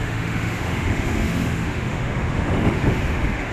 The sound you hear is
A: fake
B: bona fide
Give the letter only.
A